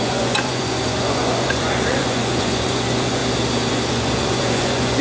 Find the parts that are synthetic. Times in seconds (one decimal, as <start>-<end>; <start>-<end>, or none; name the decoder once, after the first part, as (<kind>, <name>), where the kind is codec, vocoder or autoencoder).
0.0-3.2 (vocoder, Vocos); 3.7-5.0